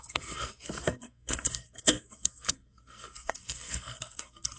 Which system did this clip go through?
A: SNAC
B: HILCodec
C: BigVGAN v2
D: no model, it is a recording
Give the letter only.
A